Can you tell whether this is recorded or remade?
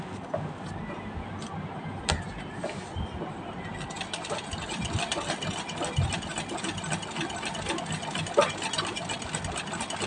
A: recorded